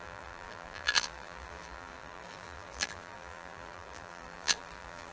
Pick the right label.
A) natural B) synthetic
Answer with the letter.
B